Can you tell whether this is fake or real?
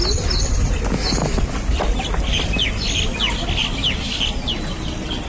real